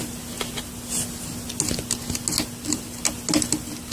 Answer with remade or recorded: recorded